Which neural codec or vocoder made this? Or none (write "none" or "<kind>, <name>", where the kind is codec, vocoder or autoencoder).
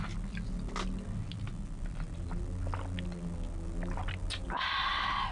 none